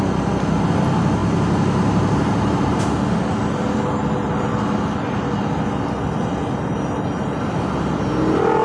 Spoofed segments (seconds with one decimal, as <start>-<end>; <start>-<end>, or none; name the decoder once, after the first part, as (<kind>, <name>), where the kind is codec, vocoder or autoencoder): 1.2-2.9 (vocoder, BigVGAN v2)